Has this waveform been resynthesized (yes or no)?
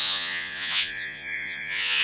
yes